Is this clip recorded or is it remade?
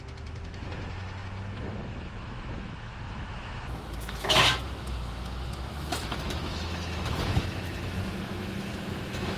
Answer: remade